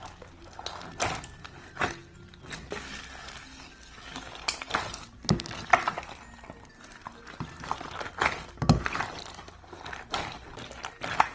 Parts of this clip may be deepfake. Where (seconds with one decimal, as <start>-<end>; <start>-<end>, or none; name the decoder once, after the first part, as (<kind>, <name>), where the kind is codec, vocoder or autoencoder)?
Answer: none